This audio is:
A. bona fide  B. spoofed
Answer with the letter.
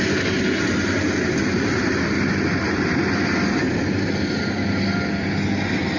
A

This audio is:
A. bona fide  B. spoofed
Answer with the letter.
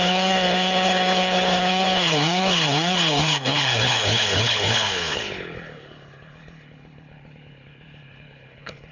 B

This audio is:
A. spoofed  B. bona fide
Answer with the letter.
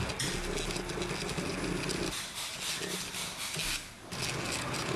B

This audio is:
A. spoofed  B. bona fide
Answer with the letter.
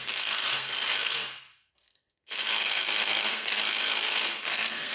A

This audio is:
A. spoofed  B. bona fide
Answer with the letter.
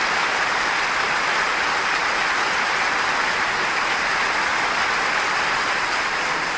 B